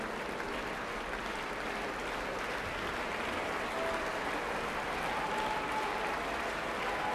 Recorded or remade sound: recorded